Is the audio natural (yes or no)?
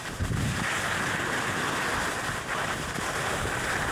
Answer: yes